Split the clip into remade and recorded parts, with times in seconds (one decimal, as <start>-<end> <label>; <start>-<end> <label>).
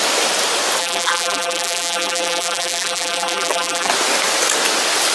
0.0-0.8 recorded; 0.8-3.9 remade; 3.9-5.1 recorded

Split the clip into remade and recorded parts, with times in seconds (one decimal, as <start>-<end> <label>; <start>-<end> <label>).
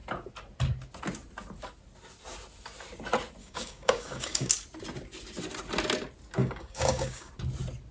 0.0-3.4 recorded; 3.4-4.5 remade; 4.5-6.4 recorded; 6.4-7.3 remade; 7.3-7.9 recorded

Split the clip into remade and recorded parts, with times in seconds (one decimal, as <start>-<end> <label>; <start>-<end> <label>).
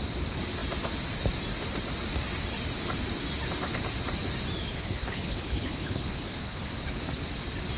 0.0-4.7 recorded; 4.7-6.6 remade; 6.6-7.8 recorded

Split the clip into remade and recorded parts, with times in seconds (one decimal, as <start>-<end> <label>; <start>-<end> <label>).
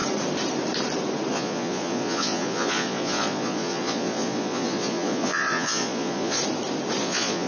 0.0-1.3 recorded; 1.3-6.4 remade; 6.4-7.0 recorded; 7.0-7.5 remade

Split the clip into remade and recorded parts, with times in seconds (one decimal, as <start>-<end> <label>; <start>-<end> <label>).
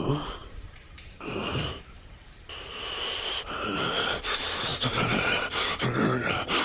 0.0-0.4 recorded; 0.4-3.9 remade; 3.9-4.7 recorded; 4.7-5.4 remade; 5.4-6.6 recorded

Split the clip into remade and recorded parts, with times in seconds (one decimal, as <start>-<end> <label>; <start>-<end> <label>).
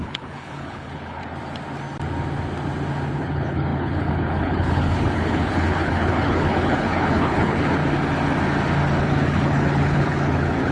0.0-1.2 remade; 1.2-3.2 recorded; 3.2-7.8 remade; 7.8-9.0 recorded; 9.0-10.7 remade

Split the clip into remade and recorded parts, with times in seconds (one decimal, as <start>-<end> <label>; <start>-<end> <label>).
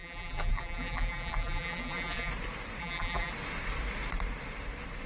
0.0-2.3 remade; 2.3-2.8 recorded; 2.8-3.3 remade; 3.3-5.1 recorded